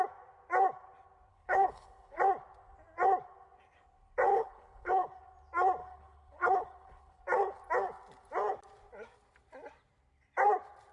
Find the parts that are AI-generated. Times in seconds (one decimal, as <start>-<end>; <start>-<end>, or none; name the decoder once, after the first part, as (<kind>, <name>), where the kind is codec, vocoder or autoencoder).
1.3-2.2 (codec, HILCodec); 4.3-5.2; 5.8-7.2